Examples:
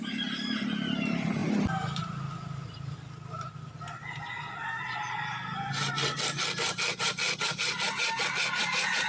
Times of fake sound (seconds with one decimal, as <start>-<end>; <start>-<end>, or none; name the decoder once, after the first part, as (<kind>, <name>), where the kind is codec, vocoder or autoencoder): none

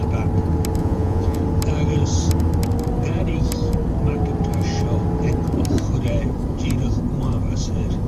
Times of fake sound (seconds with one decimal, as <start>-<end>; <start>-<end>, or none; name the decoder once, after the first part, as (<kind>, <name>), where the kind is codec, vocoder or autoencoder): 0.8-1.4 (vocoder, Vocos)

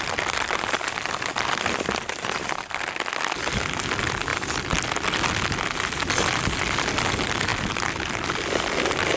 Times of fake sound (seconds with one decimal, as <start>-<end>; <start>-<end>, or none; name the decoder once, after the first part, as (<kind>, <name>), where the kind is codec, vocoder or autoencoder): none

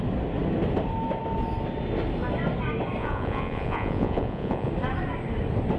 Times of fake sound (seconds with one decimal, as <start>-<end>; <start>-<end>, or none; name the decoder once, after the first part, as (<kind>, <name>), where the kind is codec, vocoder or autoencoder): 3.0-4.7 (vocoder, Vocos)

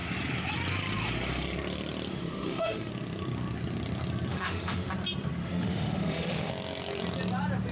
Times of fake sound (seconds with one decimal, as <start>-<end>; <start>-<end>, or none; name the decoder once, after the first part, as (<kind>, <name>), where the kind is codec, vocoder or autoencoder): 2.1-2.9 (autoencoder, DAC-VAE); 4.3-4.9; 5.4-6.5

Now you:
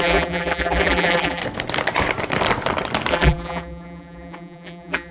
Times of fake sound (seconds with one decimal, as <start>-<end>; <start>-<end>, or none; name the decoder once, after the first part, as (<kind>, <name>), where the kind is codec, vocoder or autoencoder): 0.0-1.4 (vocoder, BigVGAN v2); 3.1-5.1

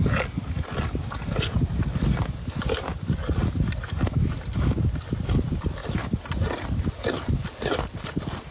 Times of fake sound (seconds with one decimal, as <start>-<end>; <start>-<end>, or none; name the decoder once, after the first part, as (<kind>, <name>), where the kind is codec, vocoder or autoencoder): none